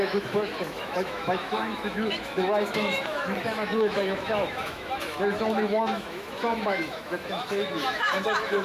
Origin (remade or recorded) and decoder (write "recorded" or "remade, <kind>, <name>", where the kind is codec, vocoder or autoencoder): remade, autoencoder, DAC-VAE